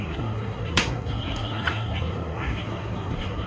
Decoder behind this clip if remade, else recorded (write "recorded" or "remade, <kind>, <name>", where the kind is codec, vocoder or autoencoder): remade, codec, SNAC